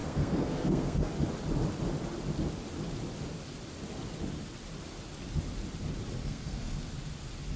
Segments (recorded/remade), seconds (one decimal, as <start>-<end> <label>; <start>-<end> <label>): 0.0-1.1 remade; 1.1-6.2 recorded; 6.2-6.9 remade; 6.9-7.6 recorded